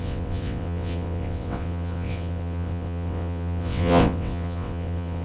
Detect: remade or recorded remade